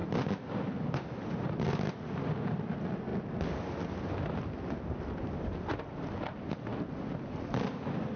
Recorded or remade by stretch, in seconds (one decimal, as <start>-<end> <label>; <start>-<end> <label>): 0.0-8.2 recorded

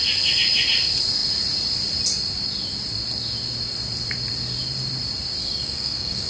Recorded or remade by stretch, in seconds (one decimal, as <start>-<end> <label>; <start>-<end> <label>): 0.0-5.4 recorded; 5.4-6.3 remade

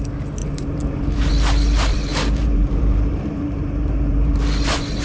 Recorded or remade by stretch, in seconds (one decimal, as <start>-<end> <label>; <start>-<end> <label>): 0.0-0.4 recorded; 0.4-1.3 remade; 1.3-2.1 recorded; 2.1-4.4 remade; 4.4-5.0 recorded

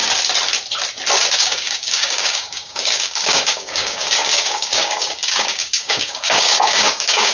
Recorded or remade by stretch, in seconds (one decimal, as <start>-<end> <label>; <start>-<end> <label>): 0.0-1.3 recorded; 1.3-7.3 remade

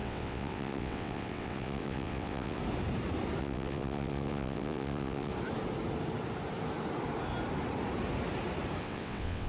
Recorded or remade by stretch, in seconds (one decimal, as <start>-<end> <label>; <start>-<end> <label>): 0.0-2.6 remade; 2.6-3.4 recorded; 3.4-5.3 remade; 5.3-8.8 recorded; 8.8-9.5 remade

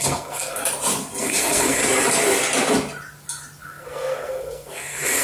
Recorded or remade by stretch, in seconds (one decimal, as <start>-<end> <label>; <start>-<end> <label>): 0.0-0.6 remade; 0.6-1.2 recorded; 1.2-1.8 remade; 1.8-3.6 recorded; 3.6-5.2 remade